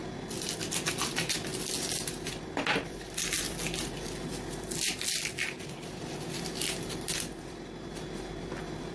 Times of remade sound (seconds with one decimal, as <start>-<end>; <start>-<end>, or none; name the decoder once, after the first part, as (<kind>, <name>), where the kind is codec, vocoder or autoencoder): none